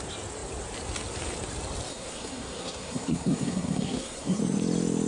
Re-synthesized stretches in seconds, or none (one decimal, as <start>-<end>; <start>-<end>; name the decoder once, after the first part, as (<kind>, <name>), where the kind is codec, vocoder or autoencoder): 1.9-4.4 (codec, SNAC)